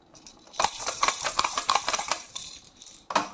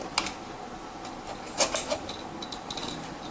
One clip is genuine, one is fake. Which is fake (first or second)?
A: first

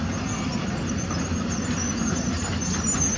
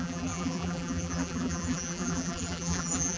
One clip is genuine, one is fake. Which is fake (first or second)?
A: second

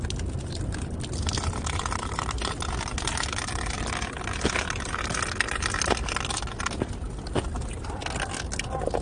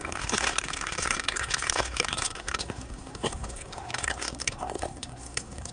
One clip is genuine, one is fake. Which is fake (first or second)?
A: second